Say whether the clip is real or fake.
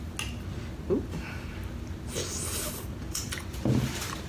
real